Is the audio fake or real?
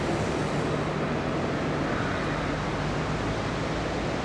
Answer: real